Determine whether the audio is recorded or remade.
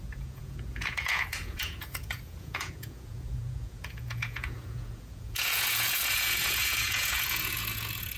remade